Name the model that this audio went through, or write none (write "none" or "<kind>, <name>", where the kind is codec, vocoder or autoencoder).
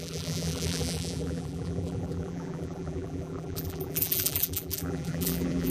vocoder, BigVGAN v2